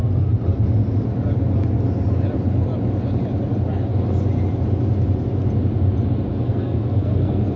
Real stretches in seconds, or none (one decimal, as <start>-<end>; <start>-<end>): 0.0-6.3